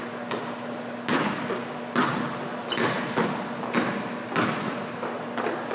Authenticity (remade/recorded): recorded